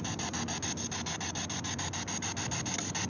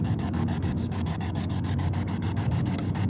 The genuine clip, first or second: first